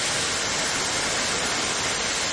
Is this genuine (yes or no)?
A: yes